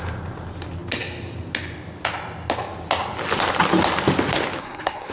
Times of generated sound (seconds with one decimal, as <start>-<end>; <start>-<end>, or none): 4.6-5.1